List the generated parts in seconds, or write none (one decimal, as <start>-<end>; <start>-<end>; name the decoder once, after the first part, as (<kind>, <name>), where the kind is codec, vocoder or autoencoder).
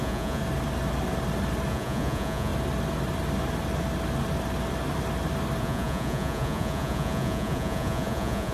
0.0-0.4 (vocoder, Vocos); 1.7-2.5; 5.6-8.5